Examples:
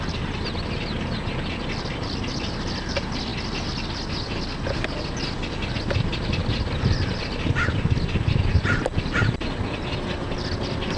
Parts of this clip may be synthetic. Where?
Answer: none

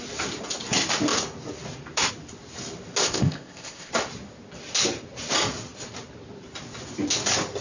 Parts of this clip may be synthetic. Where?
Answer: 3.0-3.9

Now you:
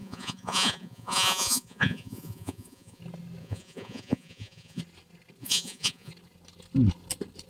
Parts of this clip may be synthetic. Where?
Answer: 0.0-3.0; 3.4-4.8; 5.4-6.1

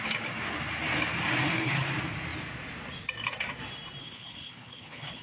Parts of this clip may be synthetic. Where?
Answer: 1.4-1.9; 4.0-5.2